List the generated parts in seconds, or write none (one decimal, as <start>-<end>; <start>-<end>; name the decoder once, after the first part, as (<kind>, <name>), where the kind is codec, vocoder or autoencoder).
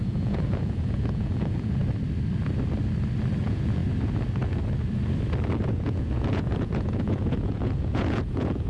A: 0.0-1.8 (vocoder, Vocos); 3.4-3.8; 5.7-8.7